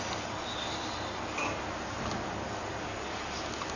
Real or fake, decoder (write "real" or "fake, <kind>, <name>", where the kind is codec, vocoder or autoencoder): real